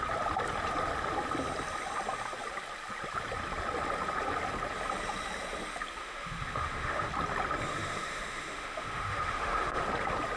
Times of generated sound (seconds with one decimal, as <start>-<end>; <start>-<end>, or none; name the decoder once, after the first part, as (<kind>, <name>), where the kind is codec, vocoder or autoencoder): 6.0-7.1 (autoencoder, DAC-VAE); 7.7-9.8